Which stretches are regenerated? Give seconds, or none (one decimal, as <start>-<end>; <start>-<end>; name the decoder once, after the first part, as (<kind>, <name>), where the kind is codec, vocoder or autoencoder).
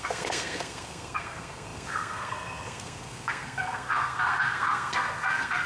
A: 0.0-5.7 (codec, SNAC)